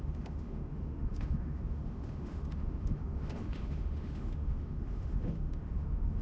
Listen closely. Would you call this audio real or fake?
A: fake